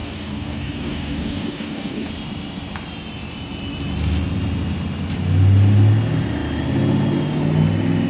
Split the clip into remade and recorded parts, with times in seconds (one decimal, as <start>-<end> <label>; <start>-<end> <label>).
0.0-2.1 remade; 2.1-8.1 recorded